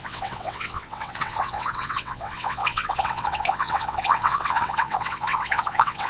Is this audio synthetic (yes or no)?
yes